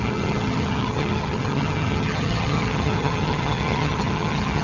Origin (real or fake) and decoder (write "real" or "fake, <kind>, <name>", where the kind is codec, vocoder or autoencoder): fake, vocoder, HiFi-GAN